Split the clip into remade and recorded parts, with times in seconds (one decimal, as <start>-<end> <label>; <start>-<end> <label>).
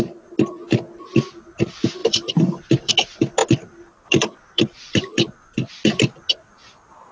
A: 0.0-2.0 recorded; 2.0-2.9 remade; 2.9-3.4 recorded; 3.4-5.7 remade; 5.7-7.1 recorded